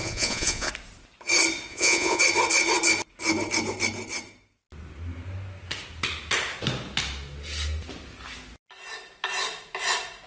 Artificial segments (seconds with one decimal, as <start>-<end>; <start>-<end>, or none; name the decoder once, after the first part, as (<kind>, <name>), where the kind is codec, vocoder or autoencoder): 0.0-0.7 (vocoder, Vocos); 1.7-2.2